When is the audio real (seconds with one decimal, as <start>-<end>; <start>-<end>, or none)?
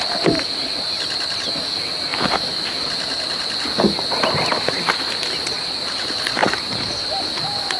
0.0-6.4; 7.0-7.8